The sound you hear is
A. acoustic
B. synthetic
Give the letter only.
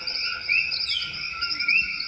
A